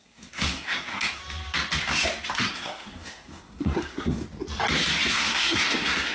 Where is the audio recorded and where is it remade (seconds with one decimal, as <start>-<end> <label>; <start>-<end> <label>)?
0.0-1.2 remade; 1.2-2.3 recorded; 2.3-4.2 remade; 4.2-5.1 recorded; 5.1-6.1 remade